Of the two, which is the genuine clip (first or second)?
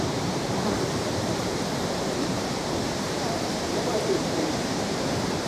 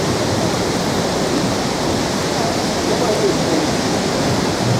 second